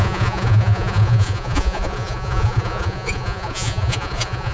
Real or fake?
fake